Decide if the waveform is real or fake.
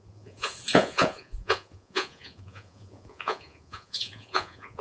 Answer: fake